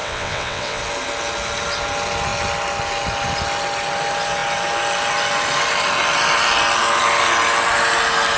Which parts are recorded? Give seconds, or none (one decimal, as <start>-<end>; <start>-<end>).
0.8-8.4